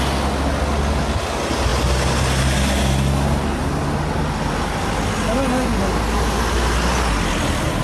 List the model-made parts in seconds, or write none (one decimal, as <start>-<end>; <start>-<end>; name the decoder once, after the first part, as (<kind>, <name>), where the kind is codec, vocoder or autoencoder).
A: none